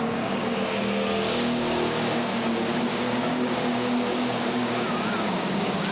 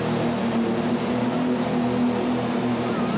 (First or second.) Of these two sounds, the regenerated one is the first